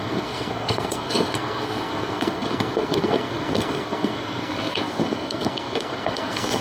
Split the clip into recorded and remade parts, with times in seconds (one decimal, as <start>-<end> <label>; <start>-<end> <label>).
0.0-6.6 remade